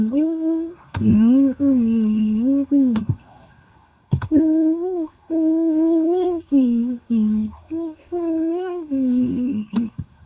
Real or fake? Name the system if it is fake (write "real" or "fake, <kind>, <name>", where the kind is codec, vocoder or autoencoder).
fake, codec, SNAC